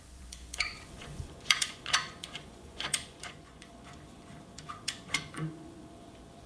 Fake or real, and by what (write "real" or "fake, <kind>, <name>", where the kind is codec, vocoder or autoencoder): fake, vocoder, Vocos